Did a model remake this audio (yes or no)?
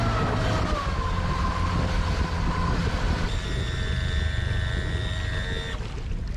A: no